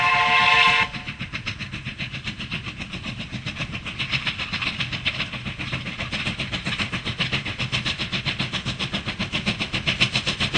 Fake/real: real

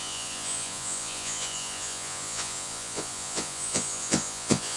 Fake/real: fake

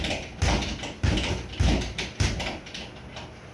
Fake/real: real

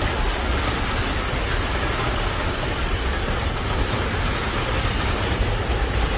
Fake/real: real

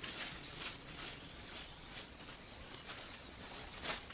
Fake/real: fake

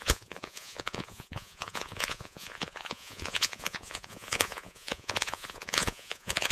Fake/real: fake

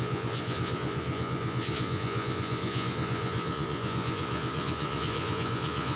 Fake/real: fake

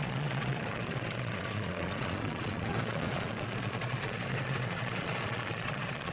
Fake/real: fake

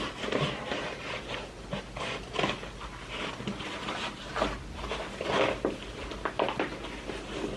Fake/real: real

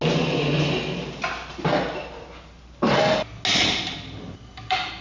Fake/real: real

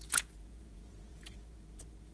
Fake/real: fake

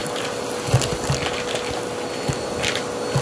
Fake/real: real